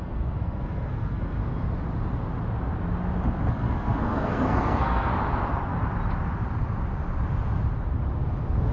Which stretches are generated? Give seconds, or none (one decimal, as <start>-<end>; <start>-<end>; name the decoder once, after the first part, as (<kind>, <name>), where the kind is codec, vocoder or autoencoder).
0.0-1.4 (codec, SNAC); 3.5-5.1